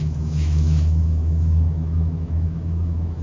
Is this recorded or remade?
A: remade